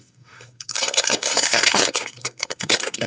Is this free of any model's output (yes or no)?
no